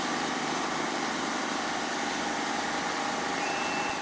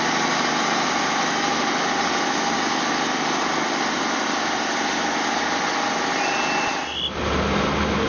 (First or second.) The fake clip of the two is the first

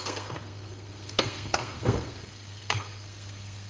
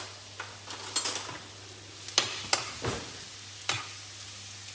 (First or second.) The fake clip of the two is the first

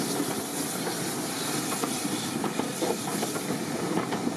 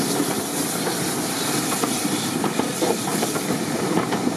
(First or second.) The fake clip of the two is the second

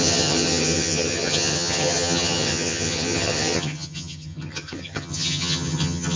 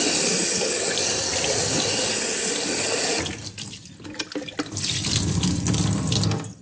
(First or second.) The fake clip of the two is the first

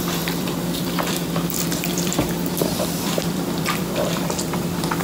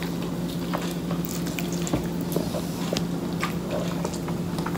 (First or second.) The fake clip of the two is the first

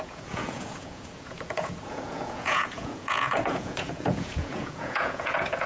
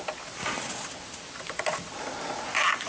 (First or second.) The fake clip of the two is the first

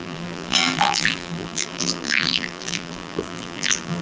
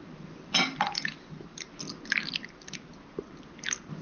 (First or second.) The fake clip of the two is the first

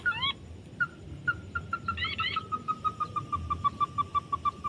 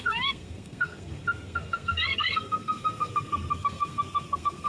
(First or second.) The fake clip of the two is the second